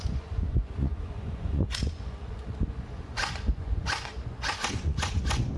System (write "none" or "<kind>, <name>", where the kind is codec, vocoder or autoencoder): vocoder, Vocos